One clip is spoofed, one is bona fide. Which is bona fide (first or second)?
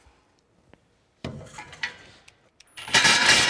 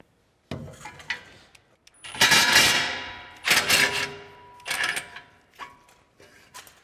second